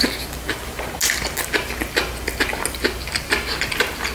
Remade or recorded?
recorded